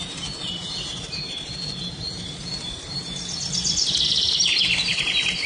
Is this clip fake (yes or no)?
no